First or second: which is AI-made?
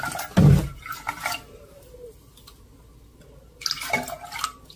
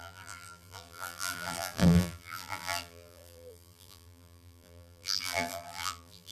second